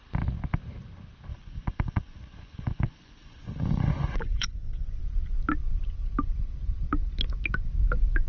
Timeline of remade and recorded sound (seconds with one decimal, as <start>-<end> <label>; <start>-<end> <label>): 0.0-1.3 recorded; 1.3-5.0 remade; 5.0-8.3 recorded